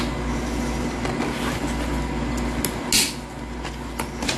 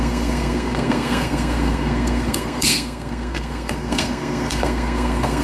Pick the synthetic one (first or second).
second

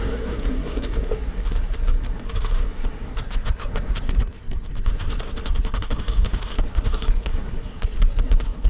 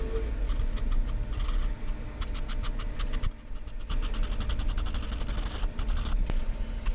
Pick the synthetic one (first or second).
first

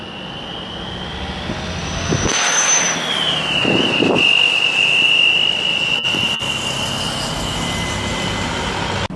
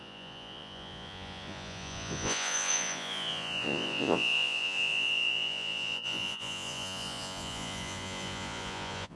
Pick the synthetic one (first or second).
second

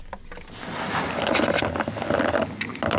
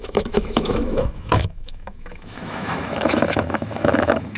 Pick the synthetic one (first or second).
second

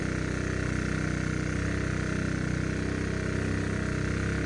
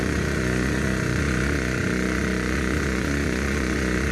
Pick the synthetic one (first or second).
second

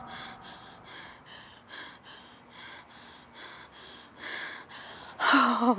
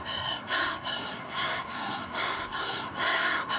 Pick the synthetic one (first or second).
second